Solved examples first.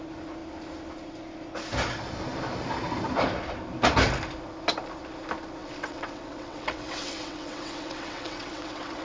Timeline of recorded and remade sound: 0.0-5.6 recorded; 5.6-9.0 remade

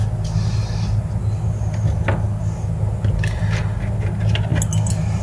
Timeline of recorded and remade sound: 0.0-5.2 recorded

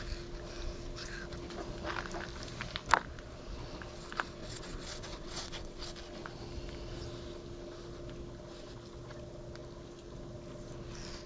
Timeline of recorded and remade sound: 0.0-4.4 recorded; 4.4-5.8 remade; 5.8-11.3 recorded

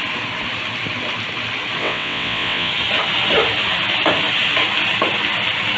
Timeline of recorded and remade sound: 0.0-1.8 recorded; 1.8-2.7 remade; 2.7-5.8 recorded